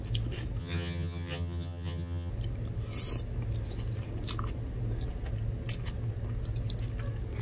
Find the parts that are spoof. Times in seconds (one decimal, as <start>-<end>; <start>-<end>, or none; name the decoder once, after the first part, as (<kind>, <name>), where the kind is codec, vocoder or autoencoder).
0.6-2.3 (vocoder, HiFi-GAN)